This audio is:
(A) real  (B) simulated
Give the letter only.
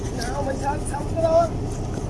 A